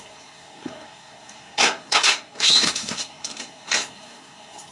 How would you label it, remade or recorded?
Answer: remade